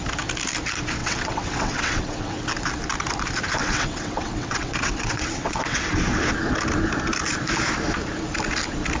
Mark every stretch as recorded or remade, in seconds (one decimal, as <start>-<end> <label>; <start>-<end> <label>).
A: 0.0-1.0 recorded; 1.0-2.5 remade; 2.5-3.6 recorded; 3.6-6.0 remade; 6.0-9.0 recorded